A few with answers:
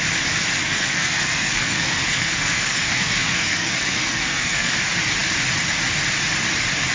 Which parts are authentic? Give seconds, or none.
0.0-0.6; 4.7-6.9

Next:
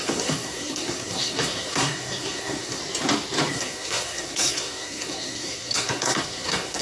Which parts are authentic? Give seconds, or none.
2.8-3.5

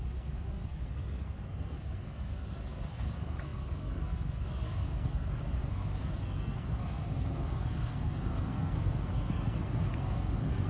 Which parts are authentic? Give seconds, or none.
none

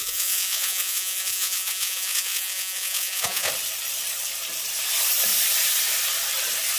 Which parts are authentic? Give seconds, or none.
3.5-6.8

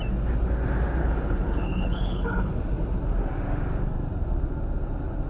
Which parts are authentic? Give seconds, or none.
0.0-1.0; 2.5-5.3

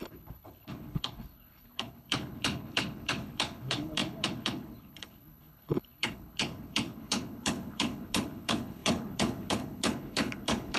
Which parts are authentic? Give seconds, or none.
none